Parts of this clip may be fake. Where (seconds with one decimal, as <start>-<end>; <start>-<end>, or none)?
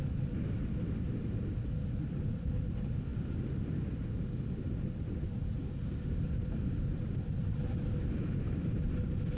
none